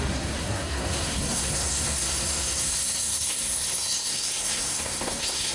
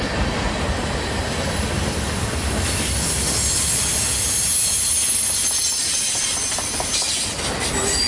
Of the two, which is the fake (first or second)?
first